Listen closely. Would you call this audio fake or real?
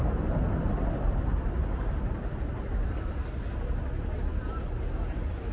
real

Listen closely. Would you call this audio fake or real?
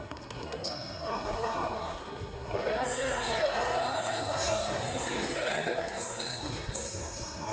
fake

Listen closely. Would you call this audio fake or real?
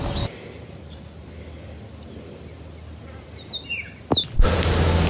real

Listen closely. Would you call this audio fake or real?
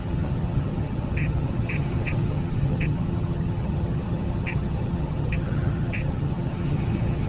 fake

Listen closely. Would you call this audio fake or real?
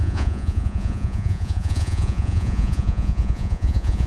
fake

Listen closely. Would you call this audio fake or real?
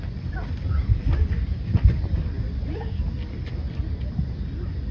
real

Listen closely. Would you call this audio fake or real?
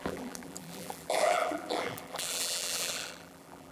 fake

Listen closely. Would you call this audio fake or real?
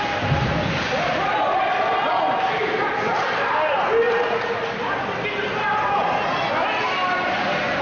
real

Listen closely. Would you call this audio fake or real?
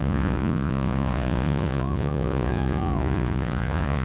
fake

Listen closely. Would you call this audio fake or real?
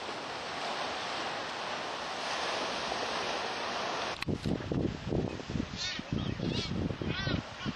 real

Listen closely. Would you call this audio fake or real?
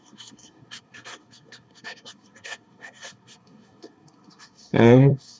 fake